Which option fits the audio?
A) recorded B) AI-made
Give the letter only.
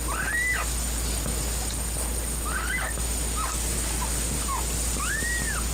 A